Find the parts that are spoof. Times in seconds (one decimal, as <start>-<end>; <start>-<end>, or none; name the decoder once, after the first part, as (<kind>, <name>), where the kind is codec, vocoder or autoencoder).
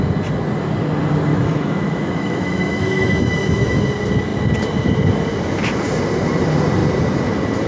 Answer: 1.3-3.8 (autoencoder, DAC-VAE)